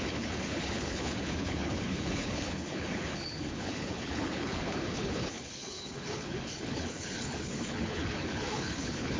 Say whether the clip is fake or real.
fake